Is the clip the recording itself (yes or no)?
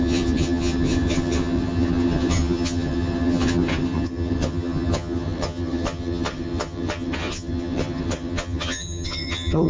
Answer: no